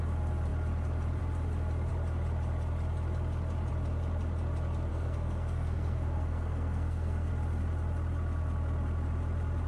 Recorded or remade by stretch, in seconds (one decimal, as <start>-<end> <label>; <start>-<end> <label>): 0.0-4.9 recorded; 4.9-7.3 remade; 7.3-9.7 recorded